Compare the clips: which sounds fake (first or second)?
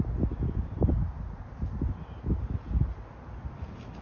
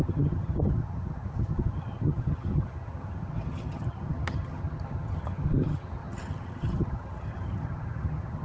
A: second